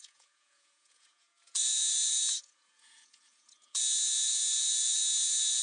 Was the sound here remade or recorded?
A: remade